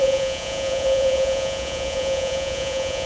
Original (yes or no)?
no